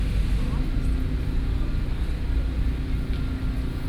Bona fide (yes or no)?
yes